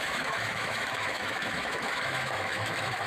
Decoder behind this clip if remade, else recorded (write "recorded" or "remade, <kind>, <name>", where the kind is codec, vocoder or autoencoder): remade, autoencoder, DAC-VAE